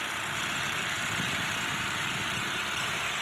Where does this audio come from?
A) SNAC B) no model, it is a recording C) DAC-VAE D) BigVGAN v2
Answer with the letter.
D